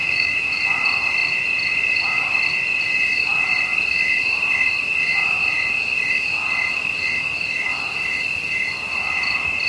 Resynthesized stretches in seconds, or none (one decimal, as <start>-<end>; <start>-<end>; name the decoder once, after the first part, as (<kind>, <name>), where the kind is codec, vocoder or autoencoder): 0.0-0.6 (autoencoder, DAC-VAE)